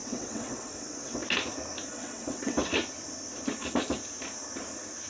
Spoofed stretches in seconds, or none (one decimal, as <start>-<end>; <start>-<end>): 0.0-1.2; 1.9-2.7